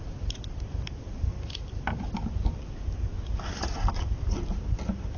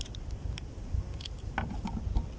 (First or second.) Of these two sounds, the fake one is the second